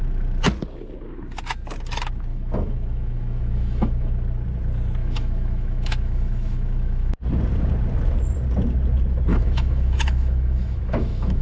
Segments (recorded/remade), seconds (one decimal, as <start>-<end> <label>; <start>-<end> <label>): 0.0-2.3 recorded; 2.3-4.1 remade; 4.1-5.0 recorded; 5.0-7.1 remade; 7.1-9.3 recorded; 9.3-11.4 remade